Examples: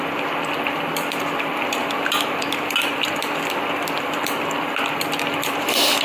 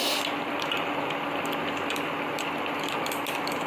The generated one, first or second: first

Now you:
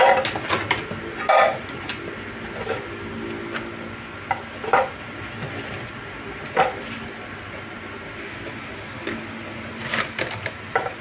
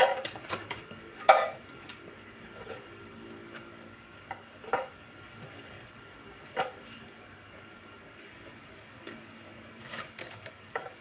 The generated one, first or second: second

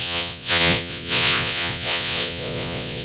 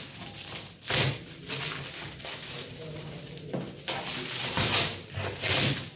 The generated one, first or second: first